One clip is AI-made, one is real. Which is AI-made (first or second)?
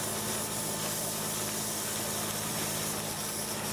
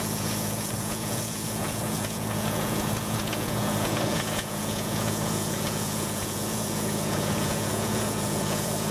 second